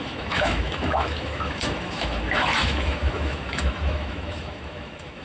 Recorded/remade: remade